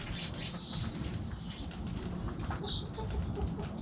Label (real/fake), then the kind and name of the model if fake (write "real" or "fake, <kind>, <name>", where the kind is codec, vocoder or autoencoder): fake, vocoder, BigVGAN v2